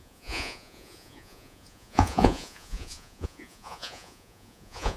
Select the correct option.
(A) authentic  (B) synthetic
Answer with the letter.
B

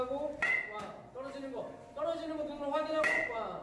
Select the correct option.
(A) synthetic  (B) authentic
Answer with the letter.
B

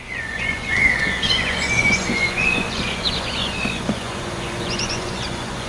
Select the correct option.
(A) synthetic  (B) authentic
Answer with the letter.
A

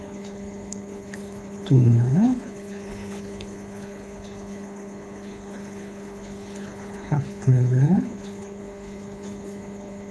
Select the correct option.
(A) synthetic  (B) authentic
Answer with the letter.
A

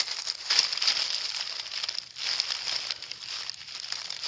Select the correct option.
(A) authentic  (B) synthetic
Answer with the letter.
A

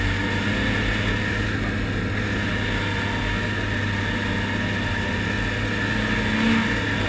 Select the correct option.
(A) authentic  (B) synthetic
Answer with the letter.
A